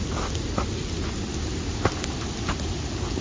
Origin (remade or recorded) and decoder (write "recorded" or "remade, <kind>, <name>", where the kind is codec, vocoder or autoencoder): recorded